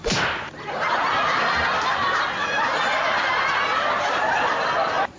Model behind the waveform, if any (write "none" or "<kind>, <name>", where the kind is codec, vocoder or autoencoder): none